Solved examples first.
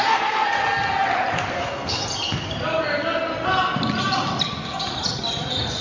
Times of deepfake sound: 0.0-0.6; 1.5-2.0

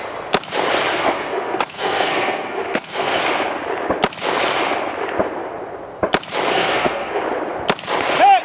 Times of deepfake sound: 0.9-3.2; 6.5-7.2